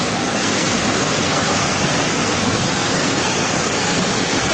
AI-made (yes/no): yes